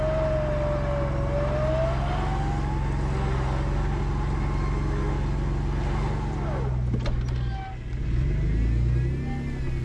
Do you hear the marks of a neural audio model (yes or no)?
no